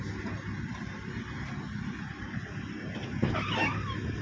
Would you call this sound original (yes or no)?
yes